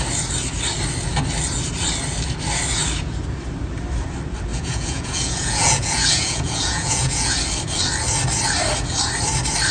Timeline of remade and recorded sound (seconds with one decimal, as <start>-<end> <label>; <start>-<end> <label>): 0.0-4.5 recorded; 4.5-7.4 remade; 7.4-9.7 recorded